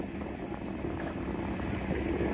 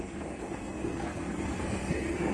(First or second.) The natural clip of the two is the first